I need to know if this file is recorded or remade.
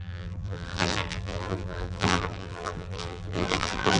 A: remade